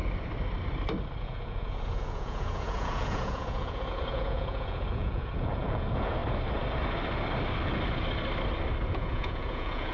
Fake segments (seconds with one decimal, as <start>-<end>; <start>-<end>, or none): 1.2-6.2; 8.9-9.9